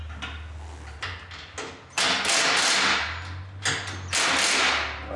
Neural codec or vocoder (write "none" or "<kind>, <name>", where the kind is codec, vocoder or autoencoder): none